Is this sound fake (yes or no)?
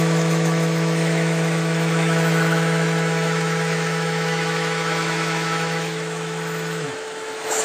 yes